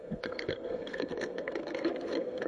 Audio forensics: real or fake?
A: fake